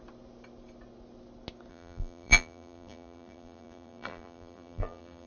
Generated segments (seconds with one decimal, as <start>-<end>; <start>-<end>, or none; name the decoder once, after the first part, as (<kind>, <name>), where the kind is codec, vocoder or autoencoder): 1.7-5.3 (vocoder, BigVGAN v2)